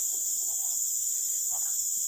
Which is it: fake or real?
fake